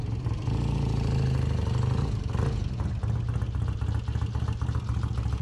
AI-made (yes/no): no